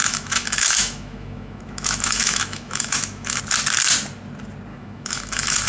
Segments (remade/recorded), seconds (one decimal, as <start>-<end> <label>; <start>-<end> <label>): 0.0-3.4 remade; 3.4-4.7 recorded; 4.7-5.7 remade

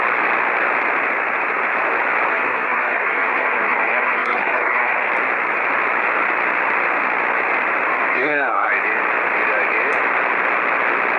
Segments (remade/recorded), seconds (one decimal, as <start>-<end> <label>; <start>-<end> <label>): 0.0-2.3 recorded; 2.3-5.1 remade; 5.1-8.1 recorded; 8.1-8.7 remade; 8.7-11.2 recorded